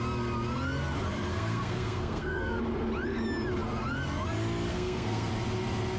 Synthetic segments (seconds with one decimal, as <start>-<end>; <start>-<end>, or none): 1.3-2.6; 4.7-5.3